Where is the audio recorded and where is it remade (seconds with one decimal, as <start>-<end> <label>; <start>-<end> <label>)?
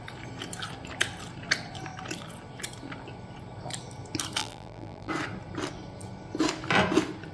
0.0-4.4 recorded; 4.4-5.1 remade; 5.1-7.3 recorded